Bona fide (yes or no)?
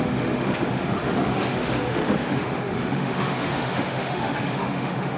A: no